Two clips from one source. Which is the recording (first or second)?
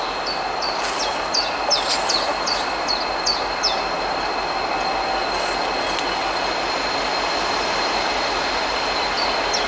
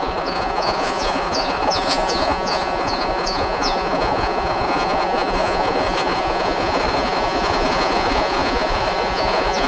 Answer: first